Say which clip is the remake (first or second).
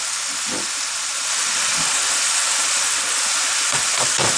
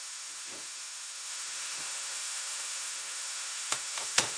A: second